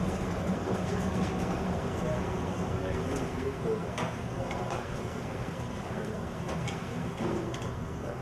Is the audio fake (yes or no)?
yes